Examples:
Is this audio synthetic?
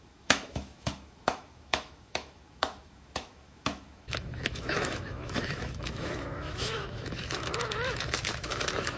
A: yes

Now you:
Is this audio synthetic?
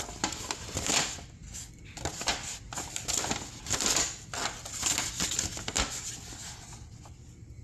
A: no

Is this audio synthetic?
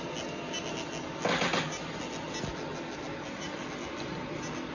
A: no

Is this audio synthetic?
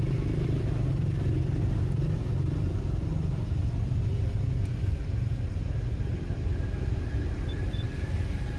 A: no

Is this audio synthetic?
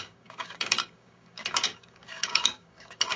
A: yes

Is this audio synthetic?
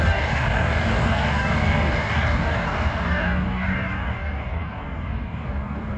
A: yes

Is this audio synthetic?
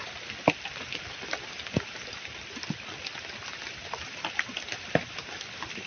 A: no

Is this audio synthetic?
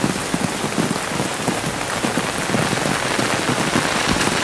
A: no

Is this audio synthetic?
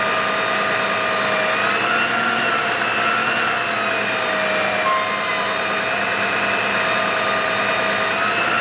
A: no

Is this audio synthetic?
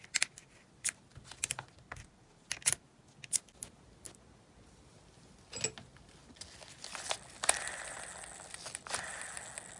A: no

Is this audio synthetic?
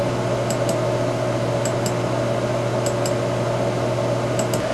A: no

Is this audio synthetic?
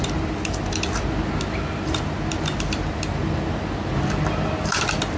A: no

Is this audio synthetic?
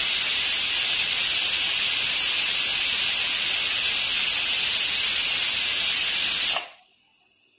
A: no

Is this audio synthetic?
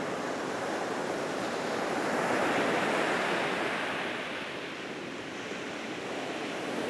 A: yes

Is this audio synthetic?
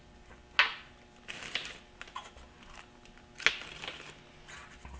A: no